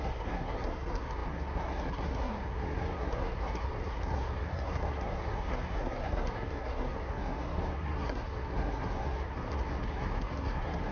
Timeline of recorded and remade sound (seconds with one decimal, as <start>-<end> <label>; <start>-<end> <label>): 0.0-10.9 remade